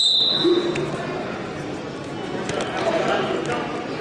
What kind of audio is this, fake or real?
real